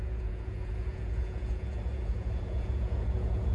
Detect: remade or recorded remade